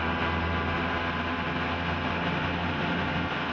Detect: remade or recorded recorded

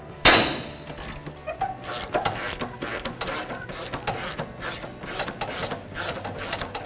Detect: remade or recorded recorded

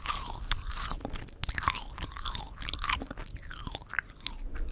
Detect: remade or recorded recorded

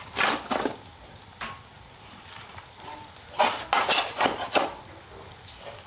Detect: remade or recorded recorded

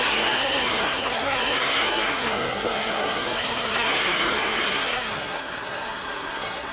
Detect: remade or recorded remade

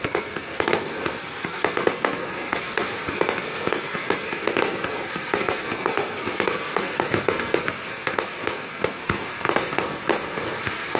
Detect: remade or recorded remade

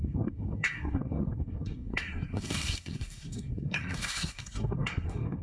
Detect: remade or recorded remade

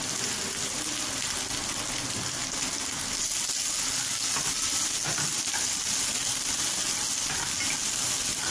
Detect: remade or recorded recorded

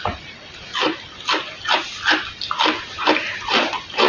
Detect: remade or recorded recorded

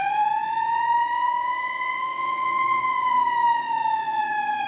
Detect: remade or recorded remade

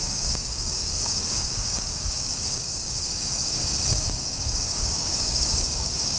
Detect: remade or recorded remade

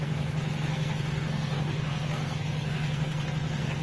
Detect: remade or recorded remade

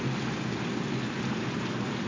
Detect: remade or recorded recorded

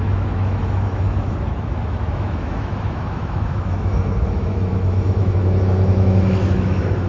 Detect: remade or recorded remade